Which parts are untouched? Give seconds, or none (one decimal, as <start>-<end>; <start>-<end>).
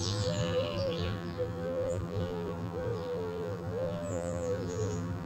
none